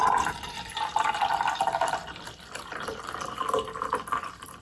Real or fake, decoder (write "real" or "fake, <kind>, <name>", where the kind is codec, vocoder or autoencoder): fake, vocoder, BigVGAN v2